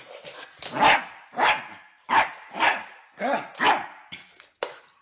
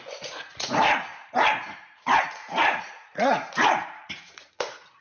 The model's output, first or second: second